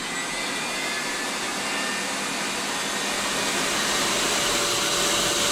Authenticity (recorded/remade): recorded